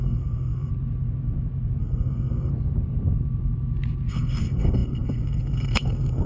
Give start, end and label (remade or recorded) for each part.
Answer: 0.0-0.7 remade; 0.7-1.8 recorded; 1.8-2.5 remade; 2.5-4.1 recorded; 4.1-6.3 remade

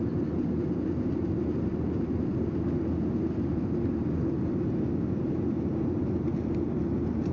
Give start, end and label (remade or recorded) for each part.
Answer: 0.0-7.3 recorded

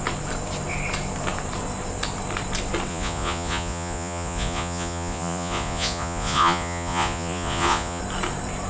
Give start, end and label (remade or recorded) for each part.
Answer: 0.0-2.9 recorded; 2.9-8.0 remade; 8.0-8.7 recorded